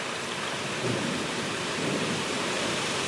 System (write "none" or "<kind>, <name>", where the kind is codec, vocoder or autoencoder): vocoder, BigVGAN v2